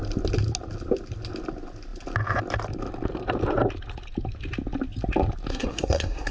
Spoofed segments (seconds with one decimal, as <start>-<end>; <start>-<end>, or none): 5.5-6.3